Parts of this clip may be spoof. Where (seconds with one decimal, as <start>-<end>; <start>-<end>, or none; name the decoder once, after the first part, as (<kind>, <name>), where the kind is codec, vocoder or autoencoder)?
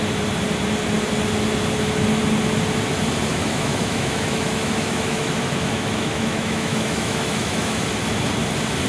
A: 3.3-7.8 (autoencoder, DAC-VAE)